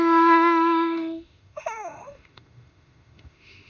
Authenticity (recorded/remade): remade